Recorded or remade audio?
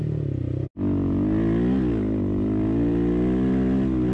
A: recorded